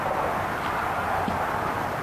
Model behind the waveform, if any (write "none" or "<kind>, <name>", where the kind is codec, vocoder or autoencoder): none